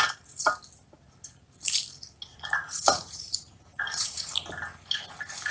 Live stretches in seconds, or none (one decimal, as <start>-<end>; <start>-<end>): 0.0-2.3; 4.4-5.5